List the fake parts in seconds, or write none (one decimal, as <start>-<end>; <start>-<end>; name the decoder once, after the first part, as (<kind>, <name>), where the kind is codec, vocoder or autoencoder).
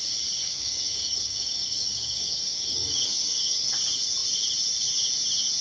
0.4-3.7 (codec, DAC)